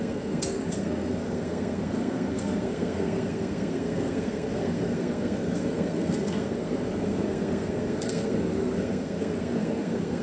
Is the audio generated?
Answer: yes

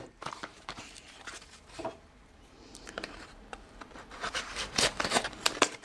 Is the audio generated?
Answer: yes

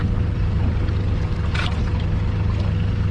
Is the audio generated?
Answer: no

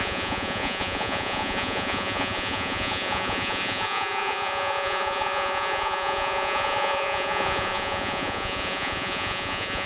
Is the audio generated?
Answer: yes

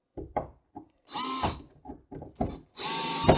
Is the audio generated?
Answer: no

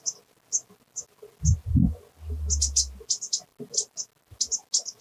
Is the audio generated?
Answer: no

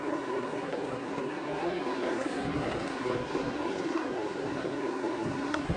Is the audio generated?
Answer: yes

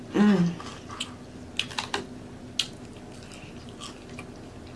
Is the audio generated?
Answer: no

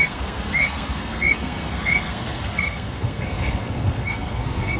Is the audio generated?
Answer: yes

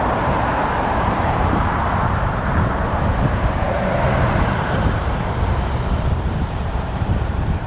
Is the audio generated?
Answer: yes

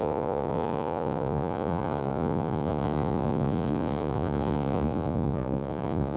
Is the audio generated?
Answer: yes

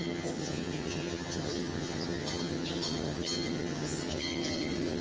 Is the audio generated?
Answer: yes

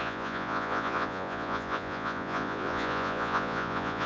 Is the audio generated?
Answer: yes